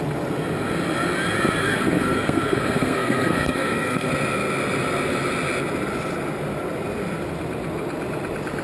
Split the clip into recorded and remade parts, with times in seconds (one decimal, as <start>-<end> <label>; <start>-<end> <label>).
0.0-1.6 recorded; 1.6-4.1 remade; 4.1-8.6 recorded